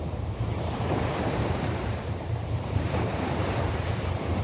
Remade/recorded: remade